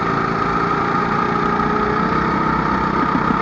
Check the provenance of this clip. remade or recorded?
recorded